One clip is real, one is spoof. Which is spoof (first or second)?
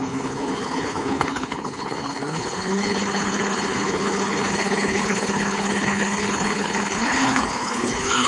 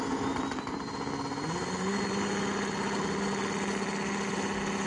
first